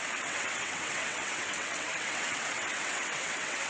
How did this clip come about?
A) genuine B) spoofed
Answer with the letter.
B